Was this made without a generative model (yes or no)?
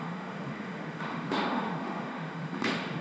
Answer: no